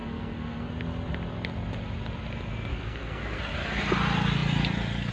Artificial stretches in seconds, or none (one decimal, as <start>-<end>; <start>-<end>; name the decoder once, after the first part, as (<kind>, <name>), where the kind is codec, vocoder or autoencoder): 0.0-0.7 (codec, SNAC); 2.7-3.4